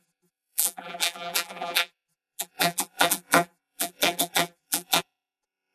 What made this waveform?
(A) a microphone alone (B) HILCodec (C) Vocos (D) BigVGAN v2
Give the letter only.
D